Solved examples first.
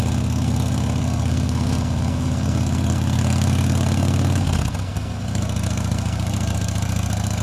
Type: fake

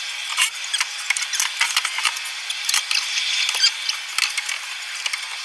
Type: real